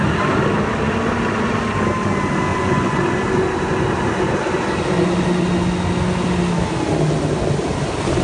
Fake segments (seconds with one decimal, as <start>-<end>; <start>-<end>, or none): 2.5-3.0